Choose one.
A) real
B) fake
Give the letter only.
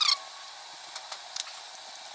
A